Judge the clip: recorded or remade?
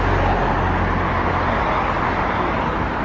recorded